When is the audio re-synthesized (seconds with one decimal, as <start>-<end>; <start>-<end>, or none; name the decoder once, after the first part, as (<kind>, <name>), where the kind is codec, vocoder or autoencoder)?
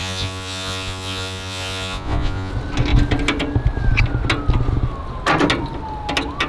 0.0-2.5 (vocoder, Vocos)